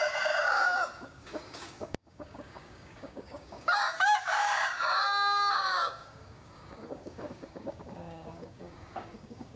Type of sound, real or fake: fake